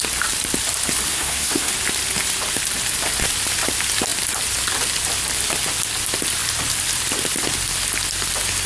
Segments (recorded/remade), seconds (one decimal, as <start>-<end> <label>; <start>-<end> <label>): 0.0-1.1 recorded; 1.1-1.7 remade; 1.7-8.7 recorded